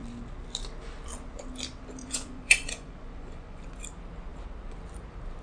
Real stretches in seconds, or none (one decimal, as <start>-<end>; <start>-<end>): 0.0-2.0; 3.6-5.4